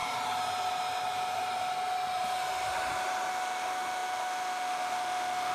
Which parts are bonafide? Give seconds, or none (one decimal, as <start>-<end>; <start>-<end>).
0.0-3.3